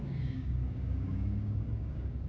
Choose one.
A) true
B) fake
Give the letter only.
B